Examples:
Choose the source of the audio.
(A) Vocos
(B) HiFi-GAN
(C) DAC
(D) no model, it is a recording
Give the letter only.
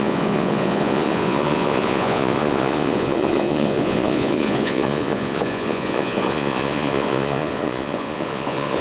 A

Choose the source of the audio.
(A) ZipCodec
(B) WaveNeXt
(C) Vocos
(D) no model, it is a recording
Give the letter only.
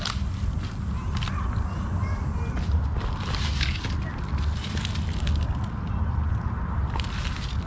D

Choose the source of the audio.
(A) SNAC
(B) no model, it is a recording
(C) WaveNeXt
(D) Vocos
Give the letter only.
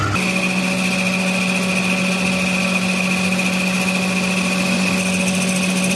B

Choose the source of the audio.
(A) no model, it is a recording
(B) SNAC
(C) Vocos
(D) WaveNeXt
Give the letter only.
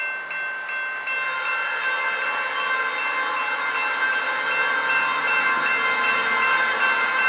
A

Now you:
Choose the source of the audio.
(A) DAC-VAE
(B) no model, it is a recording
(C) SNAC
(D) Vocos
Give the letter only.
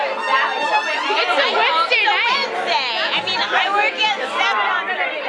B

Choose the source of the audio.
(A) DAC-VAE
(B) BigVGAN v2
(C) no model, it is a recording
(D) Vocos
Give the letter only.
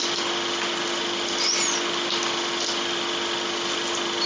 C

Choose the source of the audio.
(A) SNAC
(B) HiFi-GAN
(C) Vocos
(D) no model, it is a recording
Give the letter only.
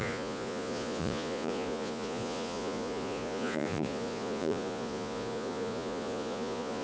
C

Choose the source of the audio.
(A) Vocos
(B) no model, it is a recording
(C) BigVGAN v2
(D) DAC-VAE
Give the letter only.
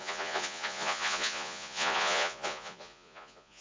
A